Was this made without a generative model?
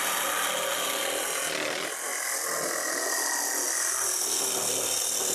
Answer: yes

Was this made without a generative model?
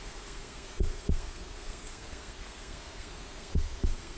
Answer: no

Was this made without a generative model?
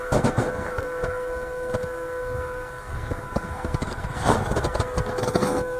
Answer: no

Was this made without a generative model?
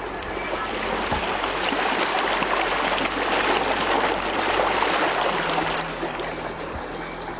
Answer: yes